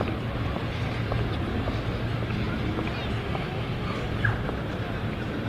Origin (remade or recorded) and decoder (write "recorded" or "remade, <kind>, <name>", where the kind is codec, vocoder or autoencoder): recorded